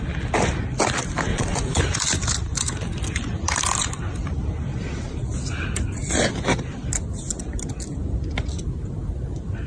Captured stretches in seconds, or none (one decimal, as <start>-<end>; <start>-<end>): 0.0-1.3; 1.8-9.7